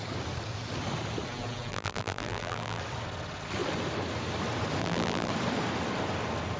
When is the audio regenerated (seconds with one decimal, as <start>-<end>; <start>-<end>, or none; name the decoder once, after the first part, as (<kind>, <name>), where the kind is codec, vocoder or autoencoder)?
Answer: 1.7-2.8 (vocoder, BigVGAN v2); 4.8-5.3